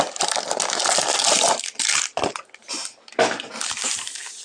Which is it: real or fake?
real